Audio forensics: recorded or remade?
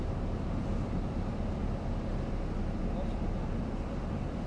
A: recorded